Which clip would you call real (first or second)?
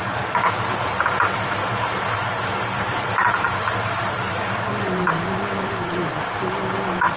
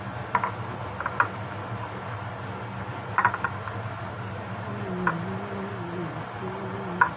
second